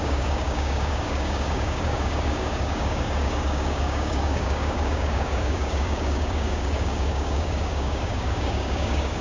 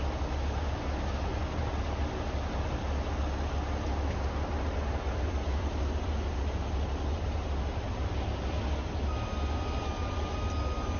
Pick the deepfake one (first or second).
first